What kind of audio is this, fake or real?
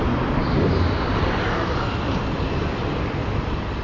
real